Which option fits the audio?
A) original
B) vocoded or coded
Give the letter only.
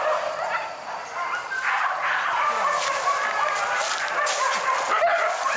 A